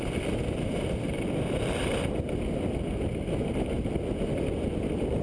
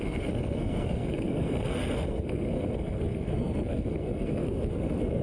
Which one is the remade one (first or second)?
second